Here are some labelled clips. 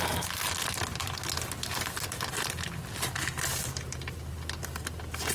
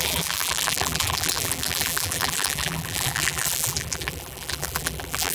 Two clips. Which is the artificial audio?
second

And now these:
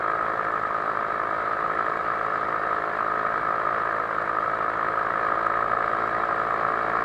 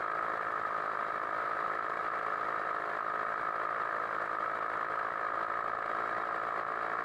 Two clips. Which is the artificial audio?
second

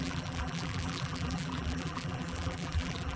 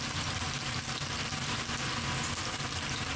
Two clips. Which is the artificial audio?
first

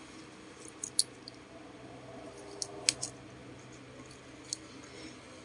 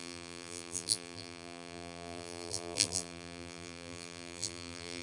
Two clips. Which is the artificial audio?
second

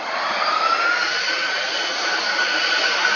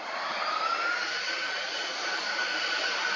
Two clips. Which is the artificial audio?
second